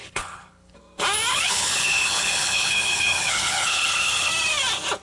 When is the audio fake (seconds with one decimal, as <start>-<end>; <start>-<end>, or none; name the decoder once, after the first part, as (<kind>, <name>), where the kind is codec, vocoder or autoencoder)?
0.0-0.8 (codec, HILCodec); 1.3-4.3